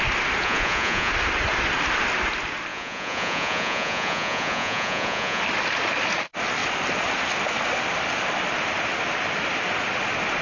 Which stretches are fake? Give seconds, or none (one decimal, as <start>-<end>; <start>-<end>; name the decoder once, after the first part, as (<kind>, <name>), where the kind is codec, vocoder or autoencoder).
0.4-1.1 (vocoder, Vocos); 2.7-5.4